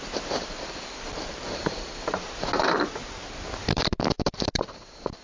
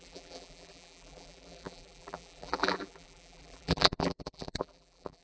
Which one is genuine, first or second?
first